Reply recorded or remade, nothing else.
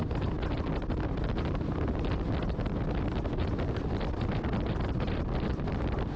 recorded